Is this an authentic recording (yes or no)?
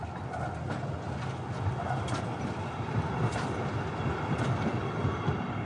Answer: yes